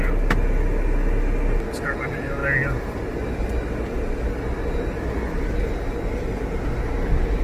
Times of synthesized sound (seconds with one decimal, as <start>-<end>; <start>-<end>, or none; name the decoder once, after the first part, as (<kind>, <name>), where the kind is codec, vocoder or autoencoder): none